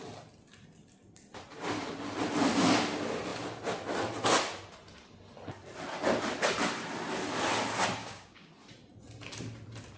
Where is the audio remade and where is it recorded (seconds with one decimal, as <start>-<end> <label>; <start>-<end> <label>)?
0.0-8.0 recorded; 8.0-8.5 remade; 8.5-10.0 recorded